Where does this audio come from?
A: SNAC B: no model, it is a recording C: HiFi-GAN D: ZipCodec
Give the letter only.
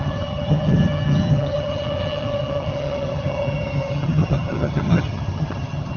C